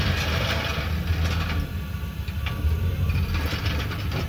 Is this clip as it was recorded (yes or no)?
yes